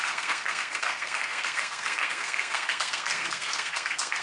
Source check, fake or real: fake